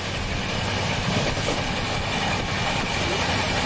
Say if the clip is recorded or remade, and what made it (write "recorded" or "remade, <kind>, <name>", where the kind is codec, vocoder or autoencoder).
recorded